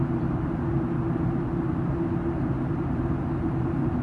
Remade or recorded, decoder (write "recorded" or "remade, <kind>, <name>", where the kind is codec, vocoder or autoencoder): recorded